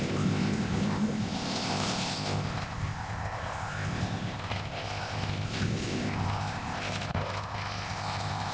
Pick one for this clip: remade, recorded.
remade